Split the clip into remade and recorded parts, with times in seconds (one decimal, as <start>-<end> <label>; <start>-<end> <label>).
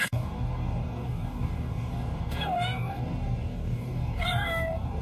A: 0.0-5.0 remade